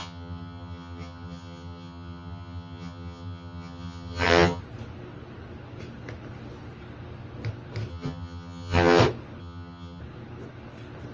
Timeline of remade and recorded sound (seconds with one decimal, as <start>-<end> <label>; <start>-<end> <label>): 0.0-4.6 remade; 4.6-7.9 recorded; 7.9-9.0 remade; 9.0-9.4 recorded; 9.4-10.0 remade; 10.0-11.1 recorded